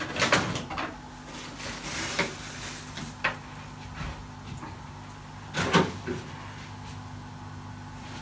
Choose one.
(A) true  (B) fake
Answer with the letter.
A